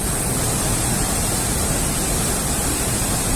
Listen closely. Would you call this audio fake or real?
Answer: real